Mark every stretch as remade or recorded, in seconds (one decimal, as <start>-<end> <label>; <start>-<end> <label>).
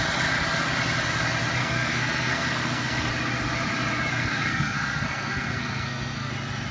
0.0-1.6 recorded; 1.6-3.1 remade; 3.1-4.1 recorded; 4.1-6.3 remade; 6.3-6.7 recorded